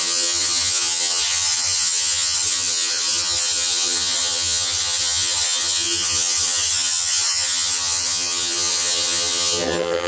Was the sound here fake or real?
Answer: fake